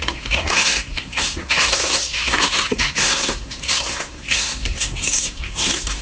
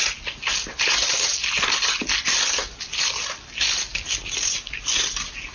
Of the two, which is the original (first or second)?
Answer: second